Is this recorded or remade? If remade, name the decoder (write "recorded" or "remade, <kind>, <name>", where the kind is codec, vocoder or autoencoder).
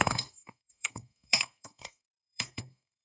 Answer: remade, codec, SNAC